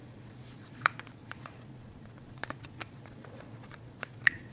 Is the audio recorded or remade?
remade